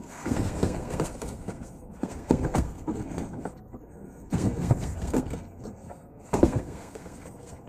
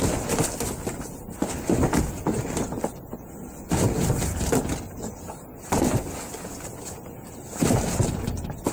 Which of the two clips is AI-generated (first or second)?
first